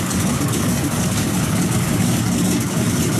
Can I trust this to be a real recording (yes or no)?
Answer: no